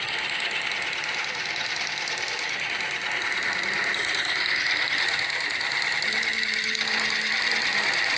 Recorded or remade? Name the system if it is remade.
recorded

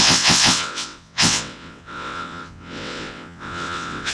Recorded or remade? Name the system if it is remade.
remade, vocoder, WaveNeXt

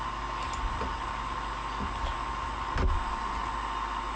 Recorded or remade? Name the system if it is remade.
recorded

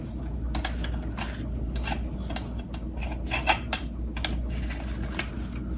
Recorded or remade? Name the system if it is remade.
recorded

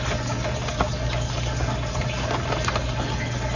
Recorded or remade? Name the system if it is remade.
recorded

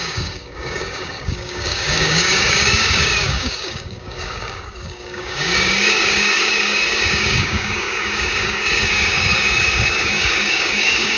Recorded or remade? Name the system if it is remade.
remade, codec, DAC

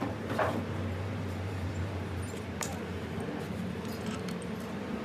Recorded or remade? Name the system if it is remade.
remade, vocoder, BigVGAN v2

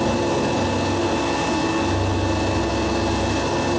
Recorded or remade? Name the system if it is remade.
recorded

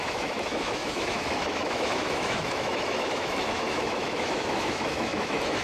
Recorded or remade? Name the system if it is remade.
remade, autoencoder, DAC-VAE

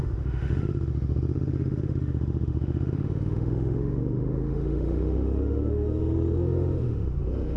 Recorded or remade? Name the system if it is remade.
remade, autoencoder, DAC-VAE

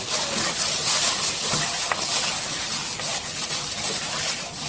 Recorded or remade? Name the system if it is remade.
recorded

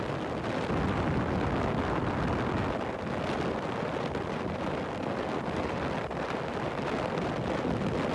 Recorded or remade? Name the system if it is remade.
recorded